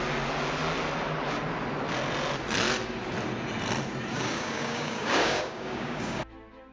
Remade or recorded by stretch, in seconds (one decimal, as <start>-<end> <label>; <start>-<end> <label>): 0.0-4.1 recorded; 4.1-6.2 remade; 6.2-6.7 recorded